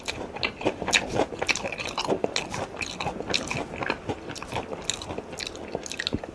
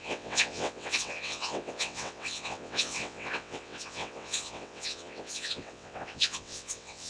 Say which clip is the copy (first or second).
second